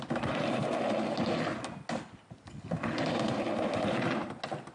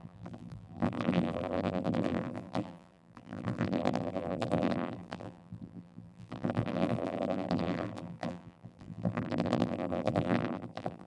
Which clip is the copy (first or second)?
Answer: second